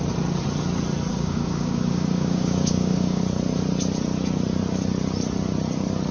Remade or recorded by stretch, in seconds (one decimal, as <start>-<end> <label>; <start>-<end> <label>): 0.0-1.1 recorded; 1.1-3.2 remade; 3.2-6.1 recorded